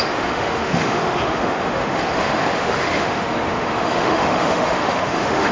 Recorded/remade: remade